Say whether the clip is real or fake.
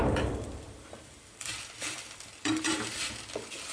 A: fake